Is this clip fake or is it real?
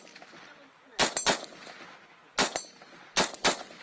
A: real